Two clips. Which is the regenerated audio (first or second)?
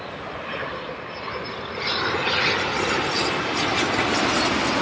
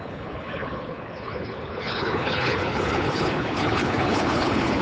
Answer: second